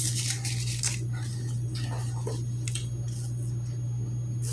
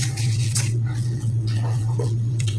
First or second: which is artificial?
second